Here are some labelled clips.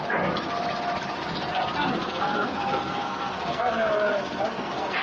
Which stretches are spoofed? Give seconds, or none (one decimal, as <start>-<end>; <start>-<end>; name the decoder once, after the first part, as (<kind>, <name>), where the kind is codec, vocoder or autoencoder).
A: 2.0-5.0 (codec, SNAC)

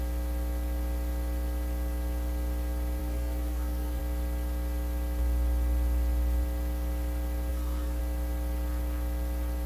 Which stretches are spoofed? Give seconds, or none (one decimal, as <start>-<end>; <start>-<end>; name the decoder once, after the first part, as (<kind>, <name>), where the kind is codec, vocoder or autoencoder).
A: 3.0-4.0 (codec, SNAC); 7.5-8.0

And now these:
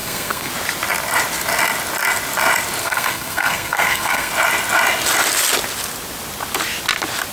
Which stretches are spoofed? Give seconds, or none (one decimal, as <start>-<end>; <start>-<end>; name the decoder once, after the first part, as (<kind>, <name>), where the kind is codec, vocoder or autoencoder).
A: 0.0-0.5 (codec, SNAC); 2.8-4.3

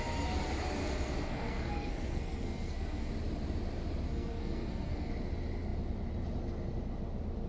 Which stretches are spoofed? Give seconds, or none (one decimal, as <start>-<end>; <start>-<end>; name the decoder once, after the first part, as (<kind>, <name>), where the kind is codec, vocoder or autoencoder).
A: 0.8-3.1 (codec, SNAC); 4.1-5.1